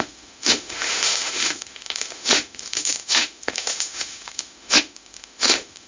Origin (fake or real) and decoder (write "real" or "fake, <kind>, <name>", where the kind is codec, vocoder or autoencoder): fake, autoencoder, DAC-VAE